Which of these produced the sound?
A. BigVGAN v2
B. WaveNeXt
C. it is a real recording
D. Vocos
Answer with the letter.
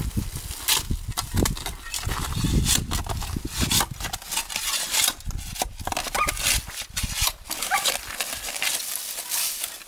C